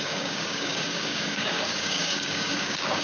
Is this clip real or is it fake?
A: fake